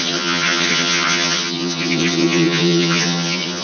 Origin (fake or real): fake